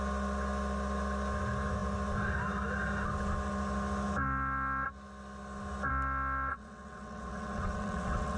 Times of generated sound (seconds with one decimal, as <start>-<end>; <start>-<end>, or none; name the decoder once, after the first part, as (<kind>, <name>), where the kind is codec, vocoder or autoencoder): 6.5-8.4 (vocoder, WaveNeXt)